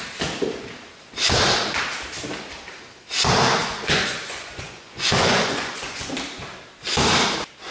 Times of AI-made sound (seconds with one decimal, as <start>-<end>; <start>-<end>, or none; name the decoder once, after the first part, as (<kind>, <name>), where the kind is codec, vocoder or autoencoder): 3.6-6.1 (vocoder, Vocos)

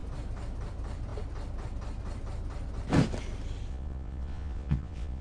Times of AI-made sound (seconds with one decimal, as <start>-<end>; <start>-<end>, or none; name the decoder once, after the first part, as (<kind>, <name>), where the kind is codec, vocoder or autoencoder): 3.7-5.2 (vocoder, Vocos)

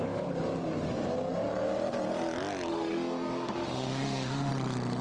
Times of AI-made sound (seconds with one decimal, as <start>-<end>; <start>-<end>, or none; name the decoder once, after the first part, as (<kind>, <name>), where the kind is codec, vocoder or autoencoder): 2.7-4.5 (autoencoder, DAC-VAE)

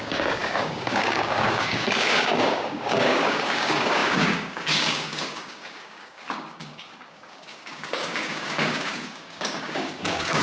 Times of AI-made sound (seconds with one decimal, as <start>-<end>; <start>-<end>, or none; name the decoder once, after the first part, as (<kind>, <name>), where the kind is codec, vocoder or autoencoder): 0.0-10.4 (codec, DAC)

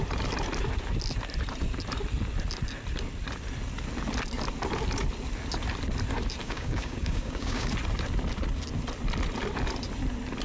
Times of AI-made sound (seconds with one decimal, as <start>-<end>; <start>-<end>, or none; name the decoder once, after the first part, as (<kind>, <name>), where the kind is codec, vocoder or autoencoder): 6.4-7.7 (codec, DAC)

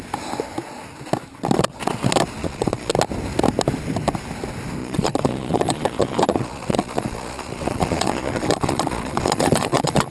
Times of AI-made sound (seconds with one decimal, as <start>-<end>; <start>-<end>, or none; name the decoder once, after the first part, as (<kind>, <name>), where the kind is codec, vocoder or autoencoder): 2.4-2.9 (vocoder, Vocos); 4.8-10.1

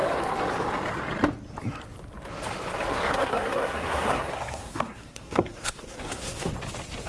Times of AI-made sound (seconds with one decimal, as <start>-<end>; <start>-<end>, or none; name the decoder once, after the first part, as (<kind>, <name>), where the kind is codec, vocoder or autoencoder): 2.9-6.5 (codec, SNAC)